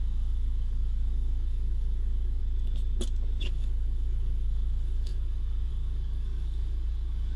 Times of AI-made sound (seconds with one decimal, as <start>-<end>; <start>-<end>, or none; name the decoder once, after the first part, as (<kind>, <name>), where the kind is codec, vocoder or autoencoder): 0.0-2.4 (codec, DAC); 3.4-7.4